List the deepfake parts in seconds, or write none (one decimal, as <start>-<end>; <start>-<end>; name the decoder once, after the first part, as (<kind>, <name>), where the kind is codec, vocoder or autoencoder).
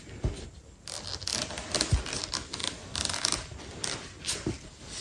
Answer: none